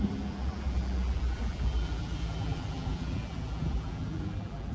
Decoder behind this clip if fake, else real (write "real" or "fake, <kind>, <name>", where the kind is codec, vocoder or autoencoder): fake, vocoder, BigVGAN v2